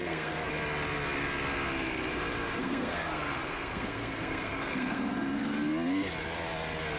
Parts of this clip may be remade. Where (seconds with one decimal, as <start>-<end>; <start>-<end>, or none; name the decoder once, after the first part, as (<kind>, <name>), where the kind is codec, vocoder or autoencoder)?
0.0-0.5 (codec, SNAC); 2.6-5.4